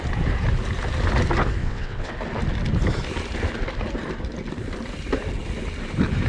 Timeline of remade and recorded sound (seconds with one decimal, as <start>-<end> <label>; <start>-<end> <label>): 0.0-1.6 recorded; 1.6-2.1 remade; 2.1-6.3 recorded